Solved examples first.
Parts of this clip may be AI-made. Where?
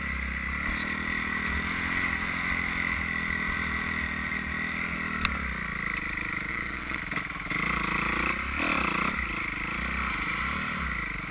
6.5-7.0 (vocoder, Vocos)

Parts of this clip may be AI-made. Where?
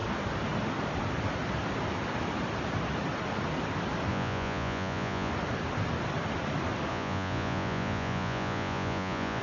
4.1-5.3 (vocoder, Vocos); 6.9-9.4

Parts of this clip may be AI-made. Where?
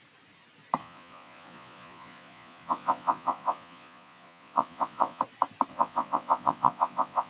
0.8-5.2 (vocoder, Vocos); 5.7-7.3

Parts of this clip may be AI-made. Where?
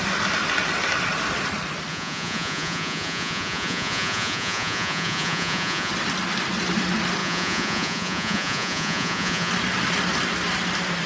1.9-5.9 (vocoder, Vocos); 7.2-9.5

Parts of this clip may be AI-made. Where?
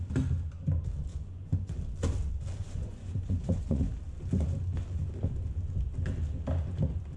1.1-1.7 (vocoder, Vocos); 2.6-3.9